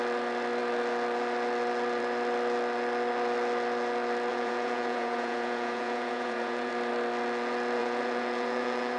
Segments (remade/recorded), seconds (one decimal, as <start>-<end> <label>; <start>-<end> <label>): 0.0-4.3 recorded; 4.3-6.7 remade; 6.7-7.8 recorded; 7.8-9.0 remade